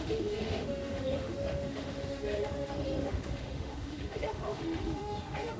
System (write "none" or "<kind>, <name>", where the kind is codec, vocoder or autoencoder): autoencoder, DAC-VAE